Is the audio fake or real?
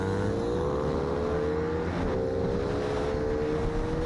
real